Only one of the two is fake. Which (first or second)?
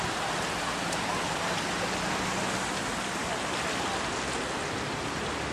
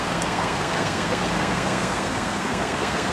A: second